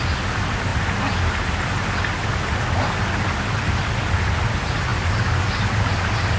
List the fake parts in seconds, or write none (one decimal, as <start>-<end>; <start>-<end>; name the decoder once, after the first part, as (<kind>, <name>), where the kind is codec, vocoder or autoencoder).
none